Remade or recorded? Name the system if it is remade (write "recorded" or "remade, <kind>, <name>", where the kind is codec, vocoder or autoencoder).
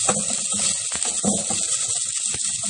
recorded